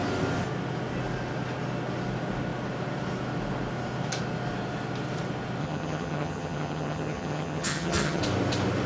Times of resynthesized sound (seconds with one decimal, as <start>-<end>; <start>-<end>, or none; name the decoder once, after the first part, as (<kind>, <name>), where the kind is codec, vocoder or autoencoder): 5.6-8.2 (vocoder, HiFi-GAN)